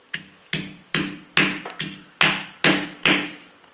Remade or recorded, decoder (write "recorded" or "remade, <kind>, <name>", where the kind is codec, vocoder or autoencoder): recorded